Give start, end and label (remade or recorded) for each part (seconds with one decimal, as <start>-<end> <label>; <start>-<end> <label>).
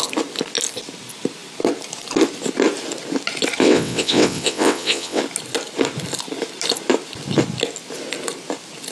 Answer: 0.0-3.6 recorded; 3.6-5.2 remade; 5.2-8.9 recorded